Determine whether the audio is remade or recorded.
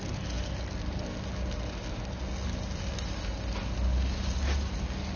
recorded